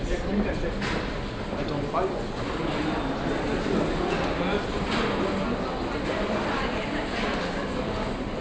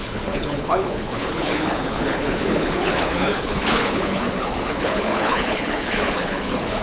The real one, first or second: first